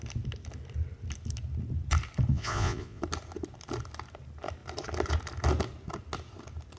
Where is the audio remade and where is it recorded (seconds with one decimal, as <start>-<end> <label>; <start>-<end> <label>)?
0.0-2.3 recorded; 2.3-3.0 remade; 3.0-6.8 recorded